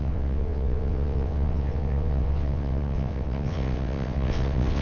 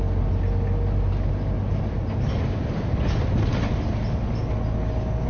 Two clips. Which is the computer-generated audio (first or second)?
first